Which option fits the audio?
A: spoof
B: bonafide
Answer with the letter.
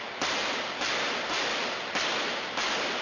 B